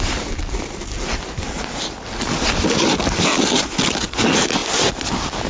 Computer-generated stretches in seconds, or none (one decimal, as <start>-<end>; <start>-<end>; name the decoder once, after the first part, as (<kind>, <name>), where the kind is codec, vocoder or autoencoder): none